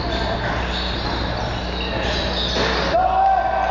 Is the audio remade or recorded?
recorded